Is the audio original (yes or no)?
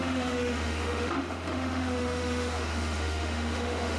no